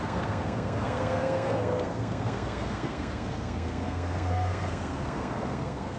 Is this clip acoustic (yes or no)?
no